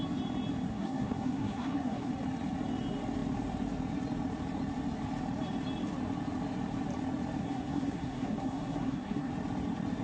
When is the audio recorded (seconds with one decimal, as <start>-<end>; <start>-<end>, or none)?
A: 0.0-0.7; 2.1-7.4; 9.3-10.0